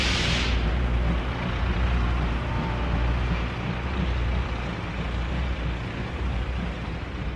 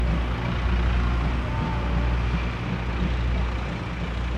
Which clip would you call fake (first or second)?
first